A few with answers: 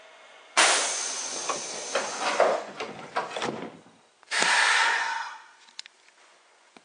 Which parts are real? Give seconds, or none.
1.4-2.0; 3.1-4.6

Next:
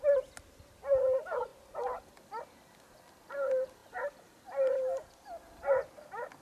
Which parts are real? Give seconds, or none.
0.0-6.4

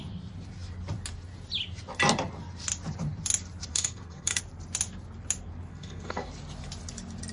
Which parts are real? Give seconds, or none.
0.0-3.7; 4.4-5.7; 6.3-7.3

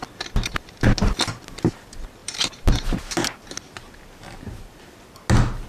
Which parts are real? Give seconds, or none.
0.0-2.2; 3.0-5.7

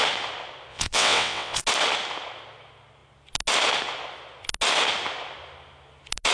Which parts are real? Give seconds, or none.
0.0-0.7; 1.6-6.3

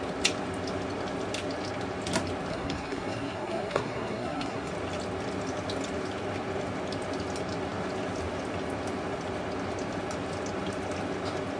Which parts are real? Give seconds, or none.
0.0-2.5; 4.7-11.6

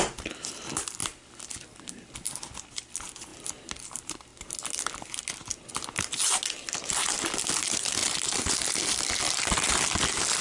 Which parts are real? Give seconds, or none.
1.0-2.5; 3.3-3.9; 4.3-7.5; 8.0-9.0